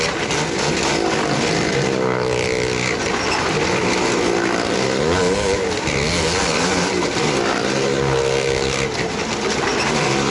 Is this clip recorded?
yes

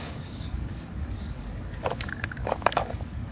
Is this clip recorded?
no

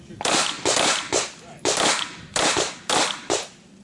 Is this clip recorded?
no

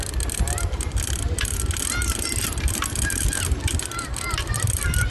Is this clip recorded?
yes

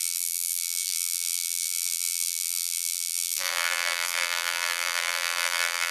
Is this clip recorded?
no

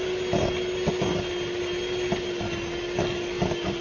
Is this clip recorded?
yes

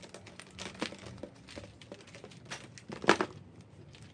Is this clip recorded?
yes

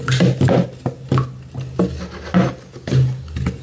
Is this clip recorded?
yes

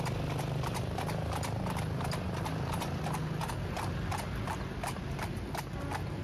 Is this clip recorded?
yes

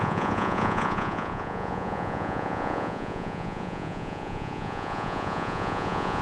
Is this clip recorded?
no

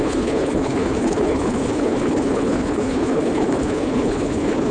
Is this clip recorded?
no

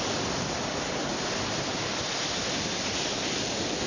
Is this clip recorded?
yes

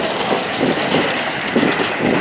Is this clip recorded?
yes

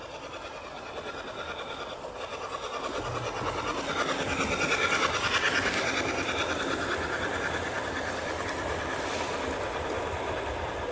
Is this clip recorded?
yes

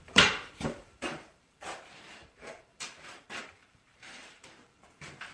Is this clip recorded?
no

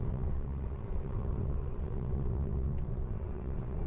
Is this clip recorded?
no